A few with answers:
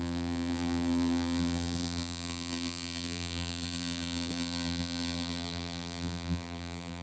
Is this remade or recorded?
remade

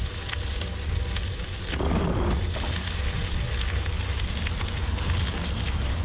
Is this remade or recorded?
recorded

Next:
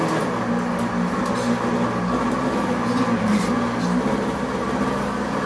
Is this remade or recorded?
recorded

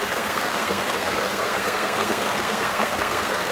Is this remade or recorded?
remade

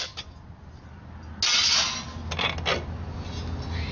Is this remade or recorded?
recorded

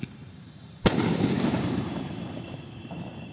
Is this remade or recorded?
remade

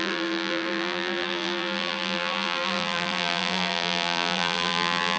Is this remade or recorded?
remade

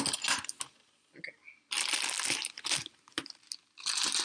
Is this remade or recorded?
recorded